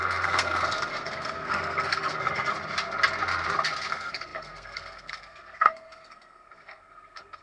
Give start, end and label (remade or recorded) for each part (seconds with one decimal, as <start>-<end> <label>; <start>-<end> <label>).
0.0-2.5 remade; 2.5-3.9 recorded; 3.9-7.4 remade